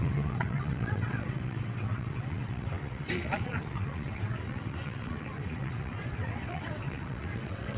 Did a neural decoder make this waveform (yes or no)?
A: yes